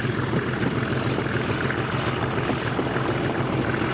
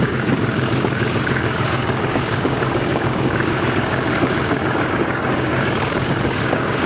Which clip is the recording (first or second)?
first